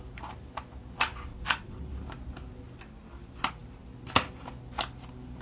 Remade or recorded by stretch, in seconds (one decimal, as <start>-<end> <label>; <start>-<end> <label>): 0.0-1.3 recorded; 1.3-1.8 remade; 1.8-5.4 recorded

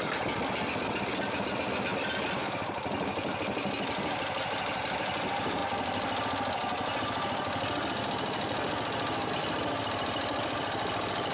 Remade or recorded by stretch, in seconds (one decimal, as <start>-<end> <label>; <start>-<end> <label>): 0.0-2.3 recorded; 2.3-5.6 remade; 5.6-9.3 recorded; 9.3-11.3 remade

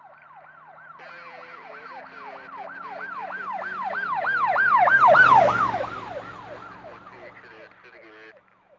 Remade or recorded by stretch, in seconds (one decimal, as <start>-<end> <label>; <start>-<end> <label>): 0.0-8.8 recorded

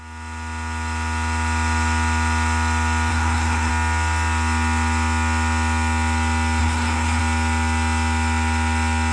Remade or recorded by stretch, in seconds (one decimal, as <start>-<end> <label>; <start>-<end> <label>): 0.0-3.1 recorded; 3.1-3.7 remade; 3.7-6.6 recorded; 6.6-7.2 remade; 7.2-9.1 recorded